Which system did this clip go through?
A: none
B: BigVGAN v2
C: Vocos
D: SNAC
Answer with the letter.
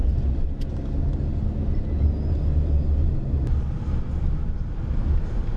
A